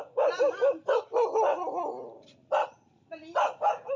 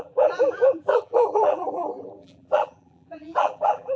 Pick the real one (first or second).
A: first